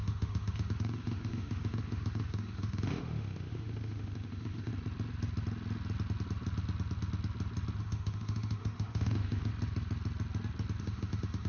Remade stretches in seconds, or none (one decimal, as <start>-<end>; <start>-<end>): 0.0-4.7; 7.8-9.5; 10.8-11.5